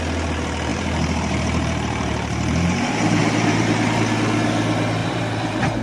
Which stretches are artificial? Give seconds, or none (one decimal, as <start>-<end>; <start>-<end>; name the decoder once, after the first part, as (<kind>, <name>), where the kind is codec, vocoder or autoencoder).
0.7-4.0 (vocoder, BigVGAN v2); 5.0-5.8